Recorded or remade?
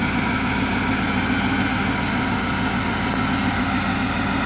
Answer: recorded